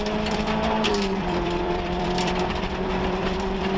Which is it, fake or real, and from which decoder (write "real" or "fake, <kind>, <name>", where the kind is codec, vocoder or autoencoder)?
fake, vocoder, BigVGAN v2